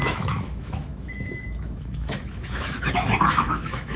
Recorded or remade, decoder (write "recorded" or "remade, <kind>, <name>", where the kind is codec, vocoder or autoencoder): remade, autoencoder, DAC-VAE